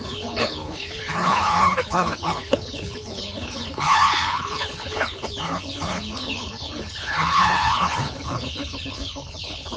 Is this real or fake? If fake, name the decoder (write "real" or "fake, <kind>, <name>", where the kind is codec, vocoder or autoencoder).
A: fake, codec, HILCodec